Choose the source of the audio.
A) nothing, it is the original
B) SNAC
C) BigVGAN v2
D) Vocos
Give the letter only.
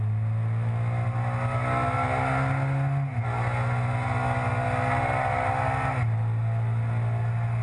A